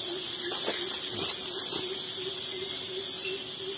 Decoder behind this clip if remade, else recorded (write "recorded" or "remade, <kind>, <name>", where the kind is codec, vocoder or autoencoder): recorded